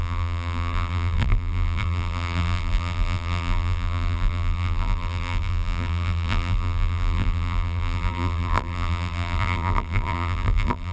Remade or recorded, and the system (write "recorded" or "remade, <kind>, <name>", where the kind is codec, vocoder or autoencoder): remade, vocoder, BigVGAN v2